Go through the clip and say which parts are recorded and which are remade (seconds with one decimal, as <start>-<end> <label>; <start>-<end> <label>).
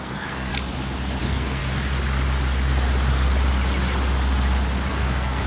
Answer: 0.0-0.5 remade; 0.5-1.2 recorded; 1.2-1.6 remade; 1.6-4.9 recorded; 4.9-5.5 remade